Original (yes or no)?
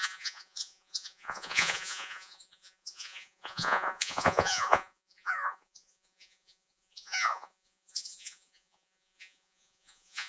no